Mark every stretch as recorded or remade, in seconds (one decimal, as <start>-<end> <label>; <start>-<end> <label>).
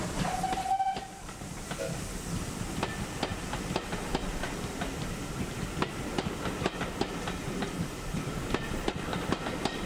0.0-9.9 recorded